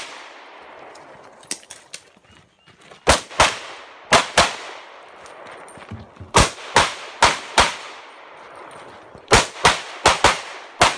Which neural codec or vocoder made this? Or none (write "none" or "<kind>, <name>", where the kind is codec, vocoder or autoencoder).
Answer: none